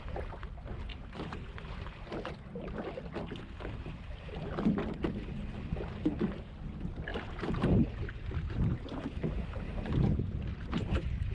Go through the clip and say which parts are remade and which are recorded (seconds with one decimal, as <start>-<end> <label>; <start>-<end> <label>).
0.0-7.1 recorded; 7.1-9.9 remade; 9.9-10.5 recorded; 10.5-11.3 remade